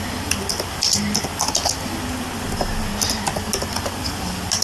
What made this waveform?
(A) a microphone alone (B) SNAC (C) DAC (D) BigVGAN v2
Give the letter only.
A